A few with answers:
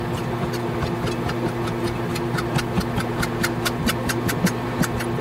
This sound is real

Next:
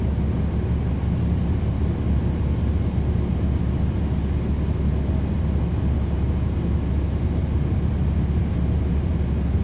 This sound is real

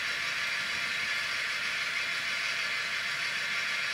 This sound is real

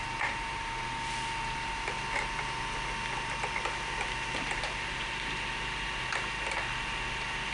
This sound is real